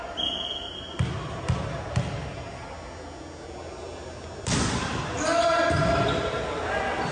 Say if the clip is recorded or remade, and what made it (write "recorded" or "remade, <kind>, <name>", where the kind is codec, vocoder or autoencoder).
recorded